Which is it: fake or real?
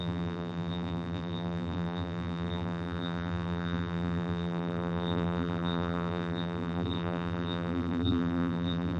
fake